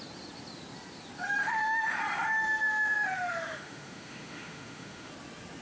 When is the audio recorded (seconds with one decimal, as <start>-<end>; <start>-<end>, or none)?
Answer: 0.0-1.4; 2.0-2.4; 5.1-5.6